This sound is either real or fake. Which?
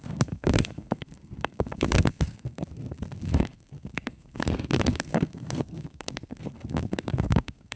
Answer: fake